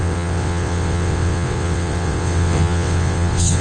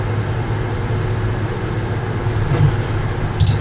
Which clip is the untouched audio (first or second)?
second